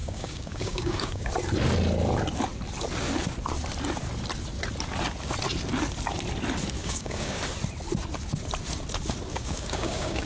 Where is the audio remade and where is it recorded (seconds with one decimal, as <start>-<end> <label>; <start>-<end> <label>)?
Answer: 0.0-1.3 remade; 1.3-6.8 recorded; 6.8-7.4 remade; 7.4-9.3 recorded; 9.3-10.3 remade